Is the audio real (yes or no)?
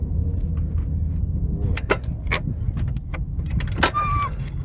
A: yes